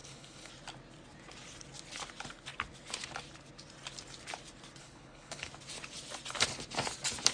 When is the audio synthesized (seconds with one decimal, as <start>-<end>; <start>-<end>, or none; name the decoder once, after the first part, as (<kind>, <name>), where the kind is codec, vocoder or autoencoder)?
0.0-0.5 (codec, HILCodec); 4.8-5.5